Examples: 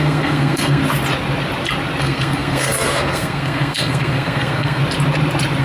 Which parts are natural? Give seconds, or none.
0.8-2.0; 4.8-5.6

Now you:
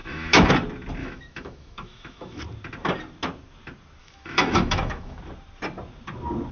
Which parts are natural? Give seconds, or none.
0.5-1.0; 2.4-4.0; 5.2-6.5

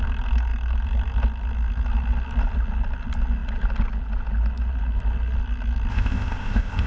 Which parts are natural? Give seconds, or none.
0.0-5.9

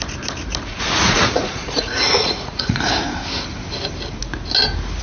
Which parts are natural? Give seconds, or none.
0.0-0.7; 2.8-5.0

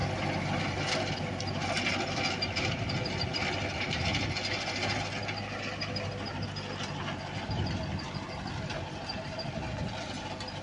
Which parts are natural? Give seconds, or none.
0.0-10.6

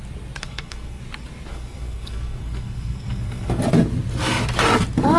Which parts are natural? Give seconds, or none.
0.0-0.4; 1.0-1.5; 3.6-5.2